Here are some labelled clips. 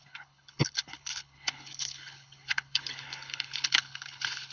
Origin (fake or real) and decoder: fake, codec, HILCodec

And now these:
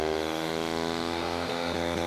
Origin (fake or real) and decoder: fake, autoencoder, DAC-VAE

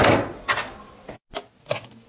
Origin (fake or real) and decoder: real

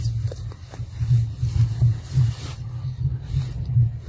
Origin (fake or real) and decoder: real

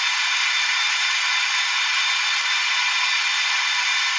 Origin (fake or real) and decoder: real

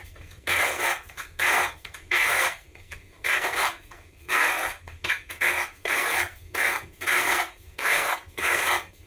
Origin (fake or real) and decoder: fake, codec, SNAC